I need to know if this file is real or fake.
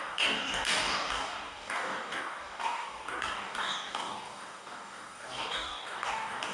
fake